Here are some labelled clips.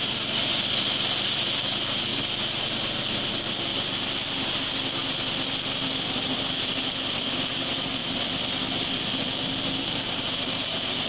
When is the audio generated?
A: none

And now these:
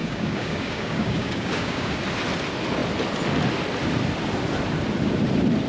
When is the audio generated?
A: 0.0-2.0

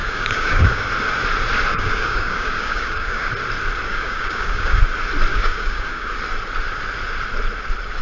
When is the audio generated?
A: 0.0-0.9; 1.7-3.3; 3.9-4.8; 5.3-6.1

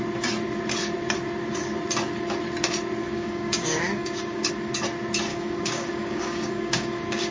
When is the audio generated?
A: 3.0-4.5; 5.3-7.3

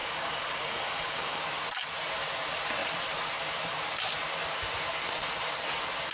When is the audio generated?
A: 0.0-1.4

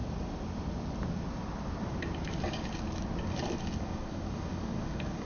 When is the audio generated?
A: 3.2-5.3

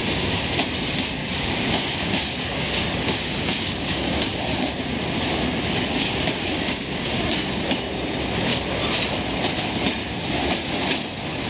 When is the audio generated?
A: 1.2-4.8; 6.0-7.7